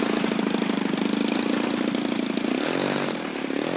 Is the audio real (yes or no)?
yes